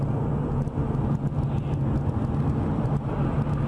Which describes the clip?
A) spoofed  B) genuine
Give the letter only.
B